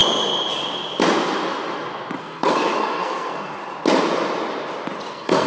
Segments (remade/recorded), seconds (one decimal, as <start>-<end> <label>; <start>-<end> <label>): 0.0-2.2 recorded; 2.2-3.6 remade; 3.6-5.1 recorded; 5.1-5.5 remade